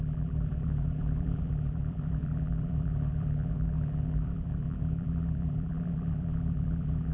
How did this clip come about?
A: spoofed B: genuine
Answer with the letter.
A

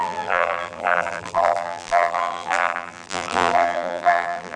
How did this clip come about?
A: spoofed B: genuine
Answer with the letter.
A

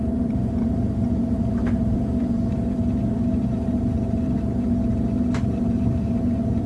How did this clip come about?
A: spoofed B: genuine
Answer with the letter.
A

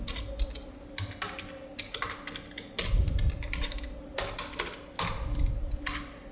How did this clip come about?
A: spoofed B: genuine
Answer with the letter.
B